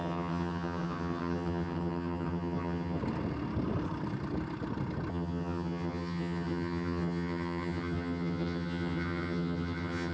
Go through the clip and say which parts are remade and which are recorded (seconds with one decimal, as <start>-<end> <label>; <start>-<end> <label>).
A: 0.0-3.0 remade; 3.0-5.1 recorded; 5.1-10.1 remade